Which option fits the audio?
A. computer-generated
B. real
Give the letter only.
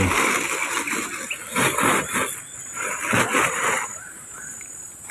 B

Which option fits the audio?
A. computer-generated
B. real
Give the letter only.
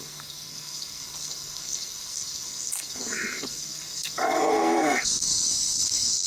A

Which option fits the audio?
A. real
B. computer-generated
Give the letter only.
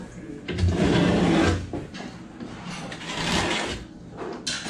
A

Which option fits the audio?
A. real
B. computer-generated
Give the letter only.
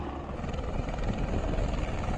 A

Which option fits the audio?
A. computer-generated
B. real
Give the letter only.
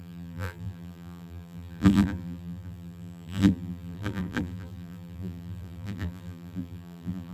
A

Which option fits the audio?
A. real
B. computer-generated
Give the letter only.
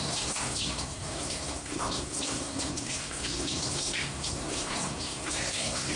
B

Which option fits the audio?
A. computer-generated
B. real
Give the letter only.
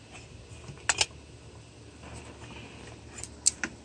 B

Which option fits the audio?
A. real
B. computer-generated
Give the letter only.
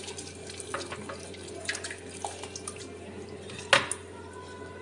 A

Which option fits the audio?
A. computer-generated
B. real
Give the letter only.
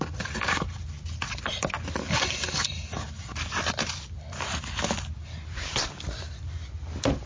B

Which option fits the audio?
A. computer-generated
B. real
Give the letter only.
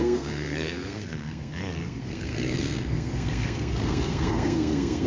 A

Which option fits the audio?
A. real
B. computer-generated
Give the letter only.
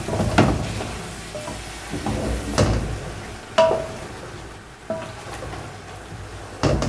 A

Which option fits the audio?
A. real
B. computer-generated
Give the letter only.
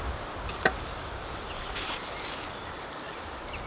A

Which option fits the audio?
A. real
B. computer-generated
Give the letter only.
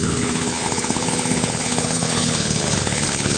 B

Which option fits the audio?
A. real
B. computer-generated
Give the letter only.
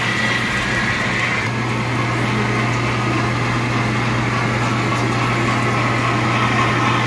A